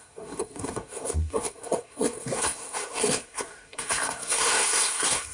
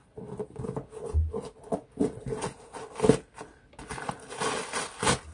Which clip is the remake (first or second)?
first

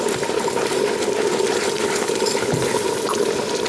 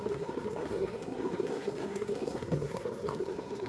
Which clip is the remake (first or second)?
second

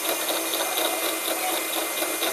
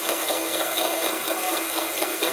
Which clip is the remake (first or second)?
second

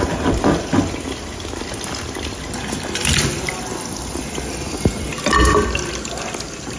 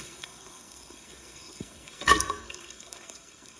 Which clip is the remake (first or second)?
second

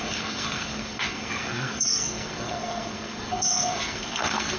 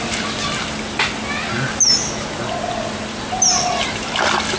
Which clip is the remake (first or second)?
first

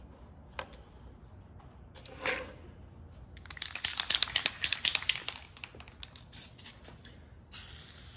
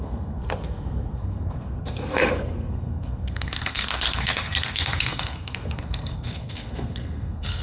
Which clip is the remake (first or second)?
second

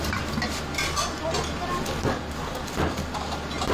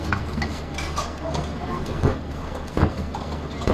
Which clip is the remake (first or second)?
second